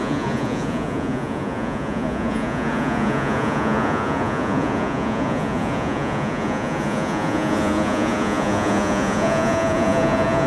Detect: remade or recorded remade